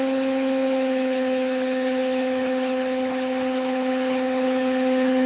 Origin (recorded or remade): remade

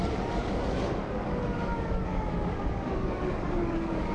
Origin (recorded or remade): remade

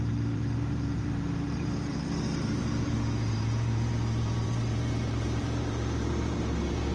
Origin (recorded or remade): remade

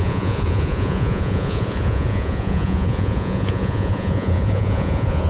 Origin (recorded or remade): remade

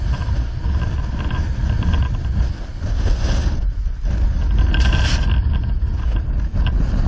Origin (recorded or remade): recorded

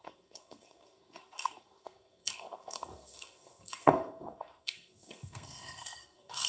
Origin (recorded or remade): remade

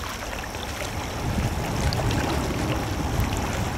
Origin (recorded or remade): recorded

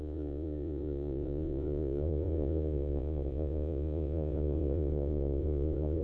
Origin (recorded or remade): remade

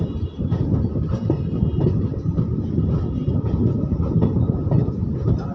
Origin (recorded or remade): recorded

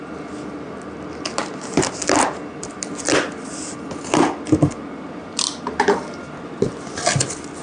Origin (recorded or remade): recorded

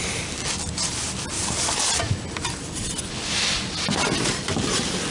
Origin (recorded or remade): recorded